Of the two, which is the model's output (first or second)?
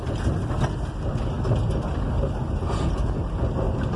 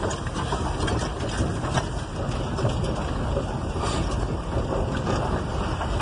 second